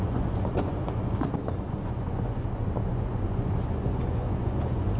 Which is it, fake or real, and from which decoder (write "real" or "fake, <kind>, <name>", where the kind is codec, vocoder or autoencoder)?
fake, vocoder, Vocos